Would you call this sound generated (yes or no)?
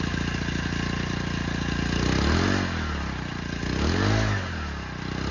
no